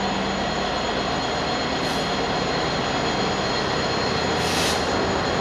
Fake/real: real